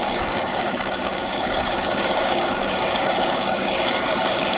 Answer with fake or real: fake